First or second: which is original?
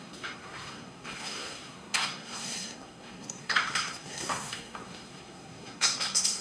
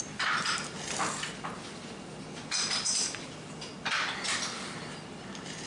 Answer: second